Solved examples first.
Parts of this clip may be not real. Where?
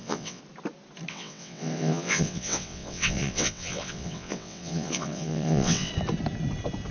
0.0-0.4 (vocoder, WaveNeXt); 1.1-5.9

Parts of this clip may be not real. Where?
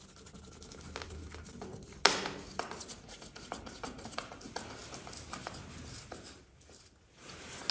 none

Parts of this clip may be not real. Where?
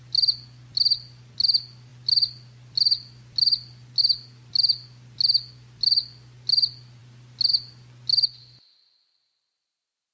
none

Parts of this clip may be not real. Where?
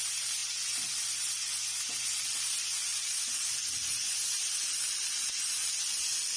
none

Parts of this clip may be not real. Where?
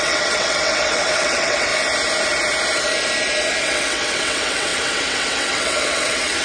0.0-1.7 (vocoder, WaveNeXt); 3.6-6.4